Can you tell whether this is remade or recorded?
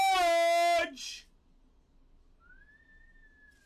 recorded